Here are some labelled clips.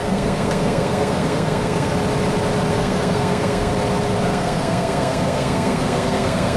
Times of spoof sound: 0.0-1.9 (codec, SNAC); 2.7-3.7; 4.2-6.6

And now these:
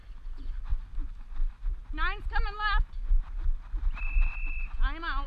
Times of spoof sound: none

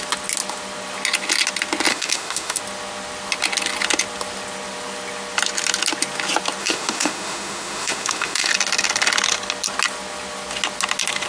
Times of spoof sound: 1.9-2.6 (autoencoder, DAC-VAE); 6.6-8.5

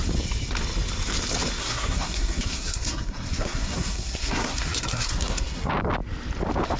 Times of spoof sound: 1.6-5.7 (codec, SNAC)

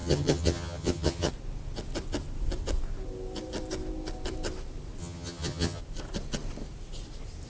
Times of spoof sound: 0.0-1.3 (vocoder, HiFi-GAN); 5.0-5.8

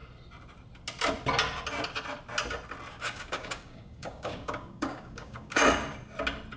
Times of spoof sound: 2.9-5.6 (codec, DAC)